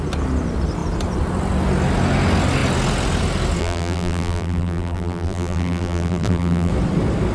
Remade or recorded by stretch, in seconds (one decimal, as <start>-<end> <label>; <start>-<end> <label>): 0.0-3.6 recorded; 3.6-6.7 remade; 6.7-7.3 recorded